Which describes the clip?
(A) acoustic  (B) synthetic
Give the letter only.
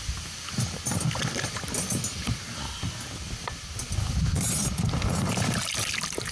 A